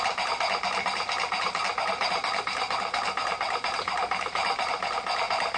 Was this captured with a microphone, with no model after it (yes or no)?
yes